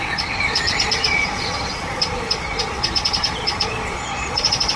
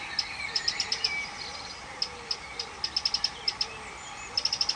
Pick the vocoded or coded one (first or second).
first